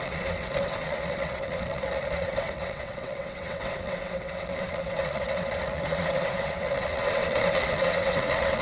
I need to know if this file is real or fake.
fake